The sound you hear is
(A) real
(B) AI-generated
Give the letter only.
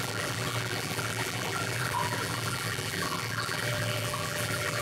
B